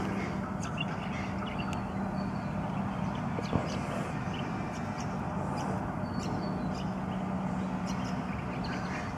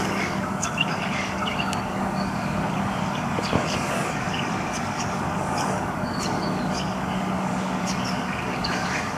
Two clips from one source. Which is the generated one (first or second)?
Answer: second